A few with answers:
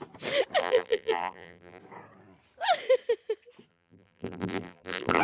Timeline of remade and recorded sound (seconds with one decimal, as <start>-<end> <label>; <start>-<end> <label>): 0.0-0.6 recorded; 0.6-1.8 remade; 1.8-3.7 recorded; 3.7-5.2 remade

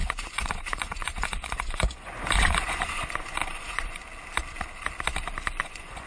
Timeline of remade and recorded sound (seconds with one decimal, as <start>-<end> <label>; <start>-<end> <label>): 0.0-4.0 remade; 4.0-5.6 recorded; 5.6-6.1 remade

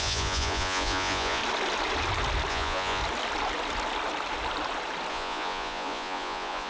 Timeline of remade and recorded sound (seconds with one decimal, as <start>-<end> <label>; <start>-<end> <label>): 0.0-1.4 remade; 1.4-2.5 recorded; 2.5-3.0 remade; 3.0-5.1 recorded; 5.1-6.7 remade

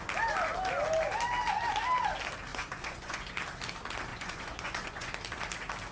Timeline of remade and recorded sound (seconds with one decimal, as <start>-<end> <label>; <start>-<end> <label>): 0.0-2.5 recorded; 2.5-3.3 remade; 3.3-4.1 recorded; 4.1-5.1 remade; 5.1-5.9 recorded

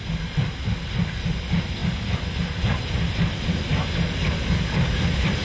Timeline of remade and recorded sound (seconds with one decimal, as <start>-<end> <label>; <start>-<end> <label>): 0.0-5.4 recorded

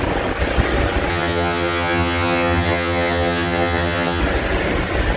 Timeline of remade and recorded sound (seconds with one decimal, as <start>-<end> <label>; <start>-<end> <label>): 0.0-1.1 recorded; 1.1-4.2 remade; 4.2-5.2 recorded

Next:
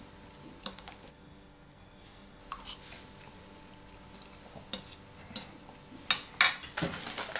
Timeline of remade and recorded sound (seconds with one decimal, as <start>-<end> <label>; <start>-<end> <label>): 0.0-1.1 recorded; 1.1-2.4 remade; 2.4-7.4 recorded